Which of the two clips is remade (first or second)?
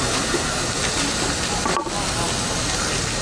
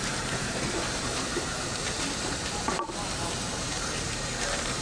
second